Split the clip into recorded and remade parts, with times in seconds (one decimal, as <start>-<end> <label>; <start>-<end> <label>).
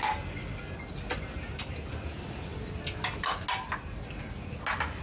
0.0-5.0 recorded